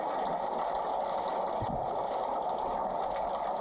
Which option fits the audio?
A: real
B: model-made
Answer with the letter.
A